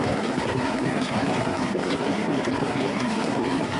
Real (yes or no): no